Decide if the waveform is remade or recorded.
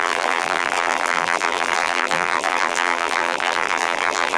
remade